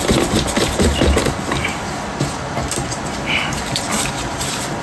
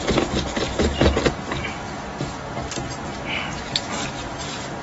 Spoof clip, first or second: first